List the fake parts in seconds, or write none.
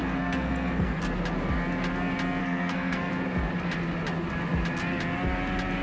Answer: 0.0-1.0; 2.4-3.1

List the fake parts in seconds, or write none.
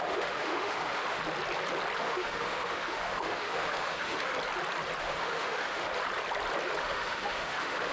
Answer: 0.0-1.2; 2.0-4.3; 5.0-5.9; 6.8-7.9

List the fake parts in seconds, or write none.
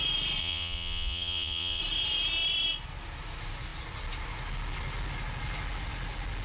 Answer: 0.4-1.8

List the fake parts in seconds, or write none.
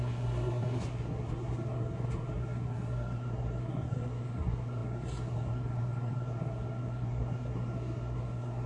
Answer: 0.0-8.7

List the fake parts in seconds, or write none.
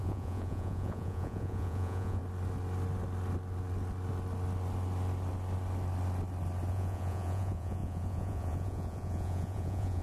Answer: 0.0-2.2; 6.7-10.0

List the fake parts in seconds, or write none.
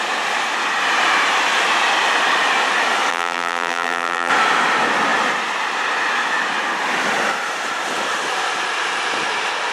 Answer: 3.1-4.3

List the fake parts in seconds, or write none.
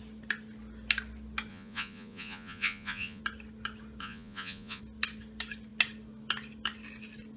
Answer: 1.5-3.2; 4.0-4.8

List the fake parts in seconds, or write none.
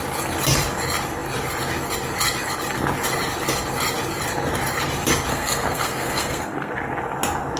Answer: 5.3-6.7